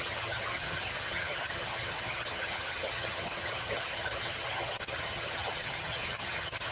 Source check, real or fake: fake